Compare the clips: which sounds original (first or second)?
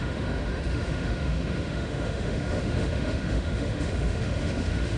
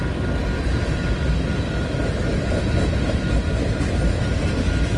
second